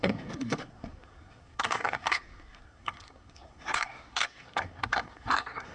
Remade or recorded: remade